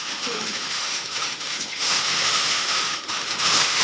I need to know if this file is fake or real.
fake